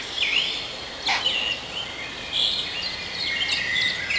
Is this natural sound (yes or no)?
yes